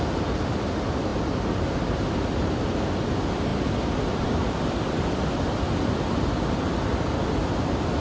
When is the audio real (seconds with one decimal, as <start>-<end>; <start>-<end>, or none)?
0.0-3.5; 5.4-8.0